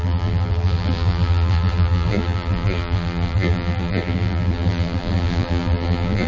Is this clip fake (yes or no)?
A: yes